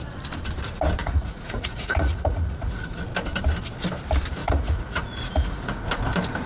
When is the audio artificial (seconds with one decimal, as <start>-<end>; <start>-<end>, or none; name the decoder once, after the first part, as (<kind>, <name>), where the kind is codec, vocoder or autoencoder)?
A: 1.0-3.0 (vocoder, Vocos); 4.4-5.8